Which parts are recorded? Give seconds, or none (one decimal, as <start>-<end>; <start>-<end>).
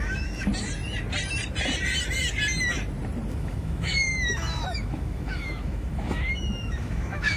0.5-3.3